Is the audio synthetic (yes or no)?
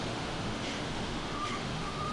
yes